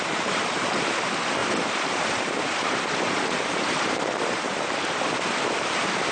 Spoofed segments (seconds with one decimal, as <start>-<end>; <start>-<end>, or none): 0.0-6.1